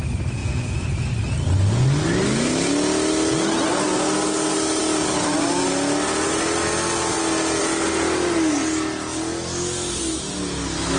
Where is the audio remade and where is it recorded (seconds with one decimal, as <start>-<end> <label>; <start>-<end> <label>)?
0.0-0.4 recorded; 0.4-0.9 remade; 0.9-11.0 recorded

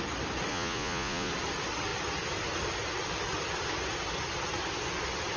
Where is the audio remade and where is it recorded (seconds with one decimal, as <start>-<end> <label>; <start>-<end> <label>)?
0.0-0.5 recorded; 0.5-1.3 remade; 1.3-5.4 recorded

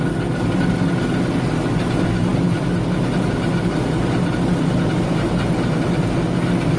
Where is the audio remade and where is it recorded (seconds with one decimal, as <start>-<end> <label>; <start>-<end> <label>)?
0.0-6.8 recorded

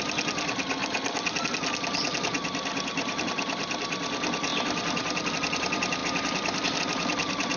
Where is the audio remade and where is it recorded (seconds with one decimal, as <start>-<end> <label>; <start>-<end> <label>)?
0.0-7.6 recorded

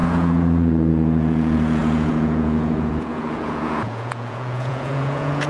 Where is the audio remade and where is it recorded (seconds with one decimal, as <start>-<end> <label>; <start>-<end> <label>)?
0.0-5.5 remade

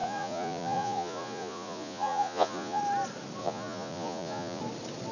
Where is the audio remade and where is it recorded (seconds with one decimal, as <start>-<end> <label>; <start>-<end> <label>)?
0.0-2.8 remade; 2.8-3.4 recorded; 3.4-4.6 remade; 4.6-5.1 recorded

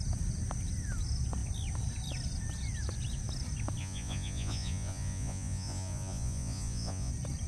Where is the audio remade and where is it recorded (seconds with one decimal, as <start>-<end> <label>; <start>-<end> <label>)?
0.0-3.8 recorded; 3.8-7.1 remade; 7.1-7.5 recorded